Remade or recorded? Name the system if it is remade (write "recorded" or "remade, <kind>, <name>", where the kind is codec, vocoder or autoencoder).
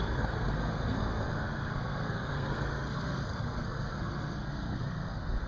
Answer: remade, codec, SNAC